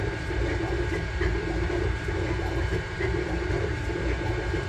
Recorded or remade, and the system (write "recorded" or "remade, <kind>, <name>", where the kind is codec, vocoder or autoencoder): remade, vocoder, BigVGAN v2